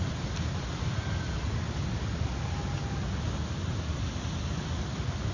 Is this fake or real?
real